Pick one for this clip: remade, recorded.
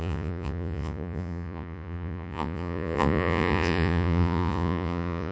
remade